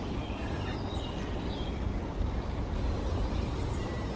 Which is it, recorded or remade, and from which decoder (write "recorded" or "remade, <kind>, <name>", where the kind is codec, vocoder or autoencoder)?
recorded